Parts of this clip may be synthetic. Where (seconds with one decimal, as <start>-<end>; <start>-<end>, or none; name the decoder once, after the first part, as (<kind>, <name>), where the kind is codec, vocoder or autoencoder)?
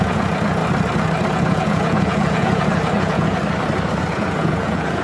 0.0-0.6 (vocoder, Vocos); 1.3-3.4; 4.1-5.0